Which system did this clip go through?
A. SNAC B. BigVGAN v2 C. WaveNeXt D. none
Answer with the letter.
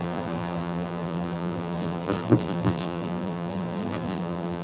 B